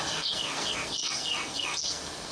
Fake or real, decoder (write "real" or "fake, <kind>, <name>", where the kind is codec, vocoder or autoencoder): fake, codec, SNAC